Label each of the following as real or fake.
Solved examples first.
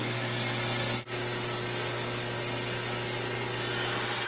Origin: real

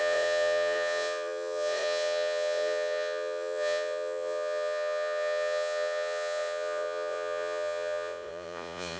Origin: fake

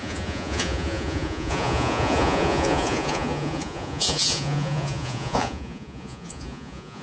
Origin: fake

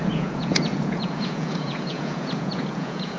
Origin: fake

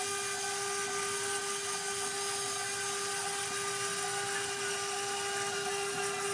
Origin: real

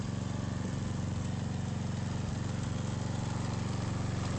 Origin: real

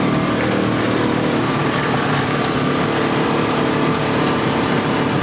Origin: real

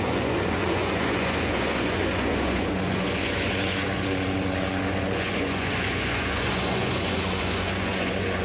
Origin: fake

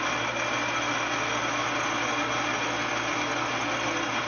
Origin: real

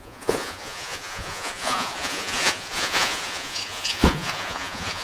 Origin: fake